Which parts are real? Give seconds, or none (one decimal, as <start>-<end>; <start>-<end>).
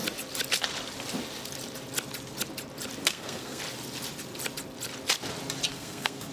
0.0-3.0; 3.6-5.7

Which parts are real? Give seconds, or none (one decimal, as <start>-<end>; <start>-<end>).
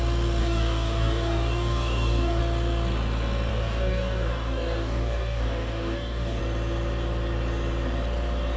0.0-0.4; 2.4-3.5; 6.4-8.6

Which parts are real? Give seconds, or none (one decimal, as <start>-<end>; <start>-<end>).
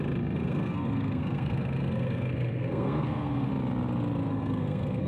0.0-0.4; 3.5-4.3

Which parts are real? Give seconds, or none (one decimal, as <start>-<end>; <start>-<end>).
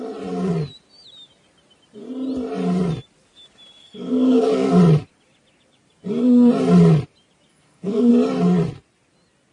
0.0-3.8; 4.7-7.5; 8.1-9.5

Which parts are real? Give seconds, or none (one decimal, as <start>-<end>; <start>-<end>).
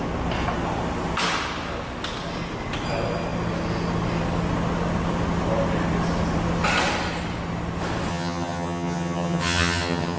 0.0-8.1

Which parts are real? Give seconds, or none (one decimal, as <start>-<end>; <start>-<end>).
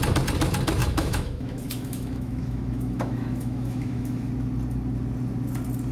0.0-0.8; 4.3-5.9